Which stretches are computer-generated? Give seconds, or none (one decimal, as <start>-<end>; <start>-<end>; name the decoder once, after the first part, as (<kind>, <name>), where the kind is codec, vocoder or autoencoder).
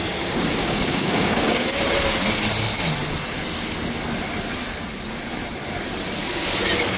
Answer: 0.0-1.8 (codec, DAC)